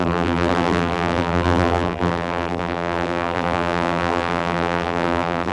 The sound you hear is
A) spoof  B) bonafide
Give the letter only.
A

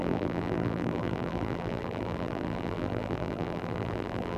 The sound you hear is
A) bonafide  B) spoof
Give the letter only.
B